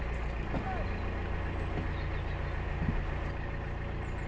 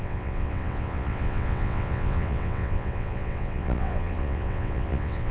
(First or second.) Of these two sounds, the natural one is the first